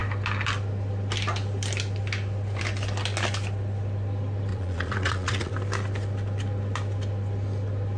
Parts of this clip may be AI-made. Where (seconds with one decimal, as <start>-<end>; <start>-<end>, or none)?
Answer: 4.5-5.5